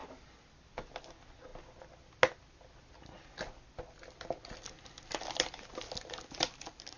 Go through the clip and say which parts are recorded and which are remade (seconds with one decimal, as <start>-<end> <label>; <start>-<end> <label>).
0.0-7.0 recorded